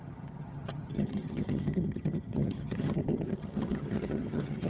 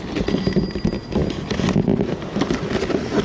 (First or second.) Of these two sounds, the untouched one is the second